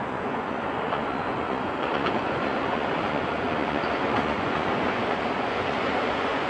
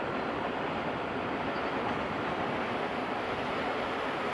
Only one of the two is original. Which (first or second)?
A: second